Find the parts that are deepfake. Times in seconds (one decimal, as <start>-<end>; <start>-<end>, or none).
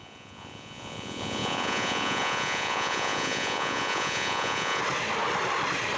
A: 0.0-4.8